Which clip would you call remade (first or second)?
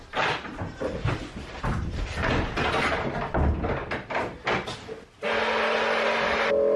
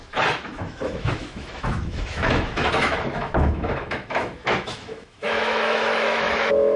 second